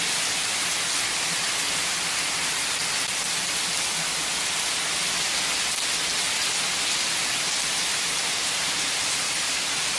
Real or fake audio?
real